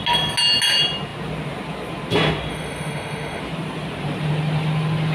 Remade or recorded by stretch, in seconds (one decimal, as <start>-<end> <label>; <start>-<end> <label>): 0.0-2.5 recorded; 2.5-3.4 remade; 3.4-5.1 recorded